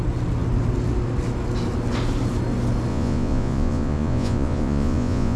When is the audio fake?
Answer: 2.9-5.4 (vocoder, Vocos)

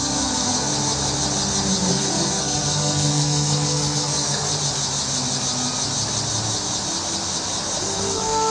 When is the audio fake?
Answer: 0.0-0.7 (codec, SNAC); 1.9-4.5; 7.8-8.5

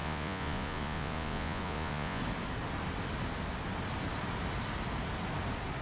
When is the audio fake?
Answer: 0.0-2.2 (vocoder, Vocos)

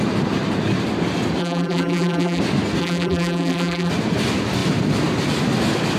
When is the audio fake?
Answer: 1.4-2.4 (vocoder, BigVGAN v2); 2.8-3.9